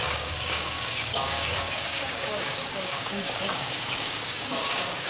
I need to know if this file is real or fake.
fake